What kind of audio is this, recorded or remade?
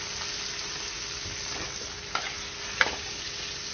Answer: recorded